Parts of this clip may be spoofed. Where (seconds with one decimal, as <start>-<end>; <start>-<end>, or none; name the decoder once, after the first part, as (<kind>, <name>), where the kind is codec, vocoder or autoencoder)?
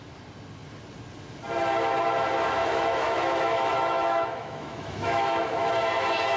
2.6-5.7 (autoencoder, DAC-VAE)